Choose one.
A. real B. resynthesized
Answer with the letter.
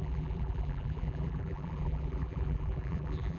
B